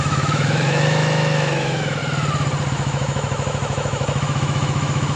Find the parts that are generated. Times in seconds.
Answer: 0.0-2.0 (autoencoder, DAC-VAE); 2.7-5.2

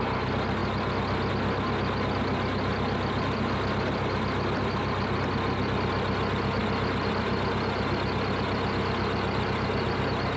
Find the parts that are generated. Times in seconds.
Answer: none